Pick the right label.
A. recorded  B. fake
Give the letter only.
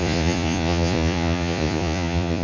B